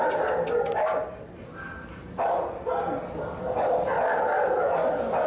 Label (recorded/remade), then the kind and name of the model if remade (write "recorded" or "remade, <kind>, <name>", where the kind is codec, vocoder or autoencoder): recorded